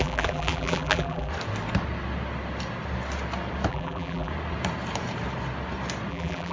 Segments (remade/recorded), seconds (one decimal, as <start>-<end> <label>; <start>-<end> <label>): 0.0-1.3 remade; 1.3-3.7 recorded; 3.7-4.3 remade; 4.3-6.1 recorded; 6.1-6.5 remade

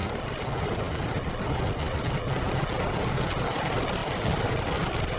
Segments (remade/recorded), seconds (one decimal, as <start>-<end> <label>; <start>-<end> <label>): 0.0-5.2 recorded

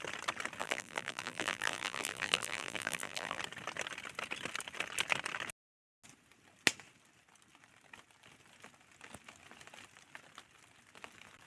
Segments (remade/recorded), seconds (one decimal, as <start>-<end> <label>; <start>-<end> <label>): 0.0-0.6 recorded; 0.6-3.4 remade; 3.4-11.5 recorded

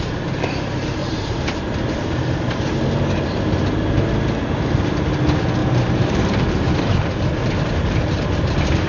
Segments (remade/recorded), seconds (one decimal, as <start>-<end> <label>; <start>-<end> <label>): 0.0-1.0 recorded; 1.0-2.2 remade; 2.2-5.6 recorded; 5.6-7.0 remade; 7.0-7.4 recorded; 7.4-8.4 remade; 8.4-8.9 recorded

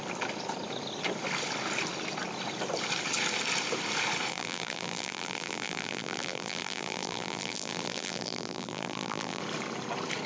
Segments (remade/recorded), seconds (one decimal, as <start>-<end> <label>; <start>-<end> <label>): 0.0-4.3 recorded; 4.3-9.4 remade; 9.4-10.3 recorded

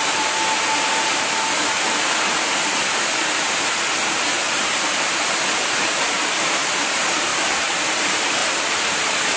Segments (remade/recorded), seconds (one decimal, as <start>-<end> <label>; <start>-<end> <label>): 0.0-8.4 remade; 8.4-9.4 recorded